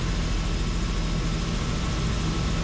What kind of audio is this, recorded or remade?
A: recorded